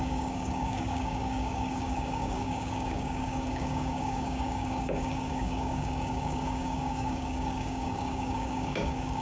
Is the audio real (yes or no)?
no